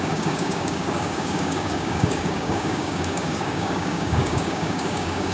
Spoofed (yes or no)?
yes